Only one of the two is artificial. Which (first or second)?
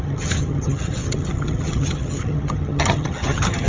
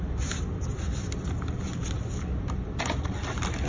first